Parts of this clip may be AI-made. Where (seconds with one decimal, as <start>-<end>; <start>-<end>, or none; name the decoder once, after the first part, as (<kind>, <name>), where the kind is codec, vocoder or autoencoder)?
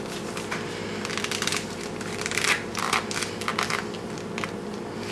1.5-2.8 (vocoder, BigVGAN v2)